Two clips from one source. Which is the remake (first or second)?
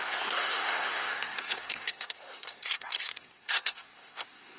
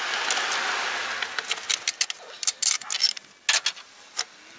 first